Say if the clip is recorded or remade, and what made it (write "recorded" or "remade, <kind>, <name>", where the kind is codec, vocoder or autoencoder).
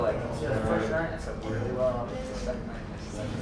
recorded